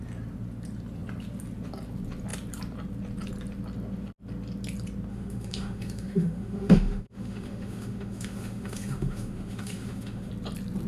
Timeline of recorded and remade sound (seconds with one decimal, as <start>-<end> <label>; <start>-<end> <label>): 0.0-5.1 recorded; 5.1-10.3 remade; 10.3-10.9 recorded

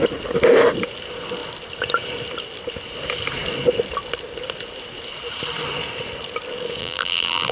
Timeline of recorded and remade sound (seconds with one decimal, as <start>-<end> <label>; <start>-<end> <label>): 0.0-6.8 recorded; 6.8-7.5 remade

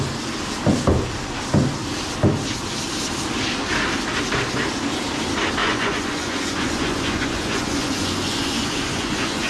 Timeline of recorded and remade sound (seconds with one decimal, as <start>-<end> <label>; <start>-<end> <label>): 0.0-5.6 recorded; 5.6-9.5 remade

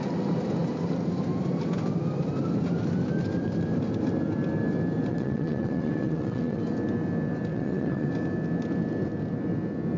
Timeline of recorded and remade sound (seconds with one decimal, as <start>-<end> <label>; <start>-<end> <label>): 0.0-5.1 recorded; 5.1-6.6 remade; 6.6-7.5 recorded; 7.5-8.1 remade; 8.1-10.0 recorded

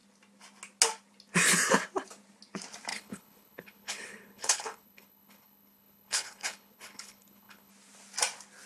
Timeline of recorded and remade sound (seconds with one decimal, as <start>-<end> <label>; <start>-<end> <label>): 0.0-2.9 recorded; 2.9-7.7 remade; 7.7-8.7 recorded

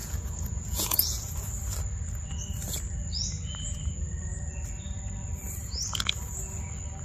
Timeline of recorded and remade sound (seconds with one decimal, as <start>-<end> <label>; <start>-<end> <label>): 0.0-1.3 remade; 1.3-7.0 recorded